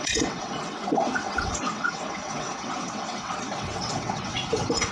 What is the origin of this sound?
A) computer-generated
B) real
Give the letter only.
A